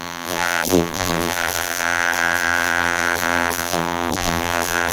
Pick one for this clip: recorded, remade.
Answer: remade